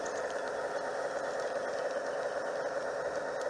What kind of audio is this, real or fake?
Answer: real